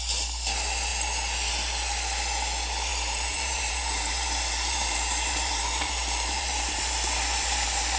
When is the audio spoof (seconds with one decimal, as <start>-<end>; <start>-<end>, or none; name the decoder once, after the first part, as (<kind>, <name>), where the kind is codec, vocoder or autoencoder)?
2.9-8.0 (vocoder, BigVGAN v2)